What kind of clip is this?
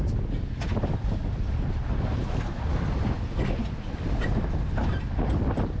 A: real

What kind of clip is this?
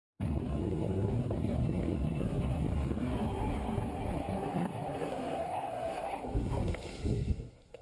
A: fake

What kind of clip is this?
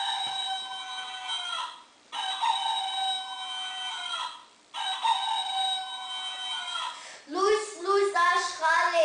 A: real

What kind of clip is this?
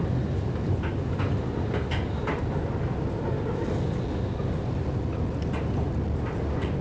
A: real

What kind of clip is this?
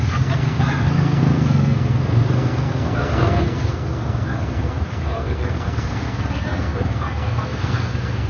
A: fake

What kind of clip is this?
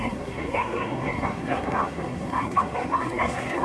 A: fake